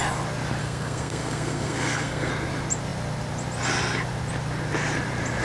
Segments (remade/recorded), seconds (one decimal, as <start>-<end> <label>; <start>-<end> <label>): 0.0-0.6 recorded; 0.6-2.3 remade; 2.3-5.4 recorded